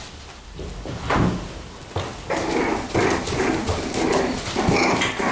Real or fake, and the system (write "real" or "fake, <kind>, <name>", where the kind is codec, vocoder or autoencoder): real